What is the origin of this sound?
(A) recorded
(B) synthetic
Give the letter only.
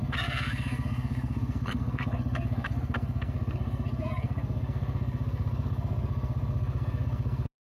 B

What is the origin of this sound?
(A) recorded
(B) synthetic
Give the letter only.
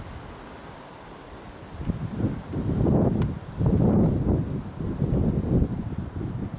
A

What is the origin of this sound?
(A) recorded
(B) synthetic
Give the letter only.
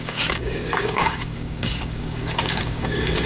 B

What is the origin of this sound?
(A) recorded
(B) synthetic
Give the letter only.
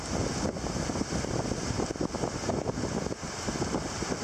A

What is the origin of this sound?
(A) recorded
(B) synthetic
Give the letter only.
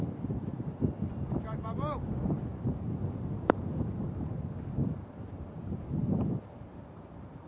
B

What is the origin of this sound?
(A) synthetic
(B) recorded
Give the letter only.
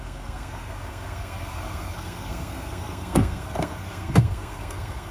A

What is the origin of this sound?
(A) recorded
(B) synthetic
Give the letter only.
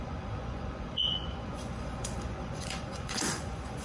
B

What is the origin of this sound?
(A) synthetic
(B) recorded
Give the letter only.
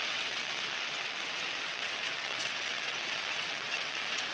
A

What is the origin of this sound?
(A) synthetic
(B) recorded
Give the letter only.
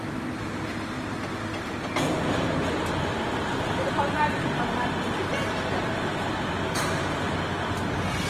B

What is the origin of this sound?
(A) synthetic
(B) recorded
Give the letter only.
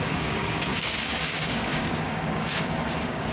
A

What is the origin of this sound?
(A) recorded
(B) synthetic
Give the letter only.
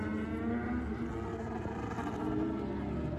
A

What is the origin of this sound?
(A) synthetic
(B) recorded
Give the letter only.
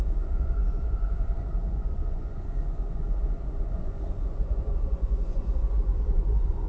A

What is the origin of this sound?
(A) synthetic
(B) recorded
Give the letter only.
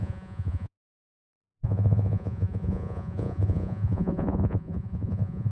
A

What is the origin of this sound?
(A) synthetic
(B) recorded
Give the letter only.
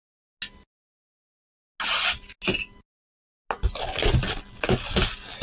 B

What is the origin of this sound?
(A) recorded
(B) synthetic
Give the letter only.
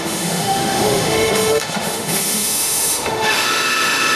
B